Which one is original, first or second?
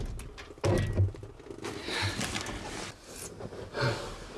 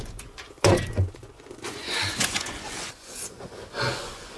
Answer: first